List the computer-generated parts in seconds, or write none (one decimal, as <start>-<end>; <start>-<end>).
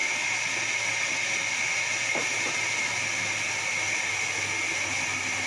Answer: none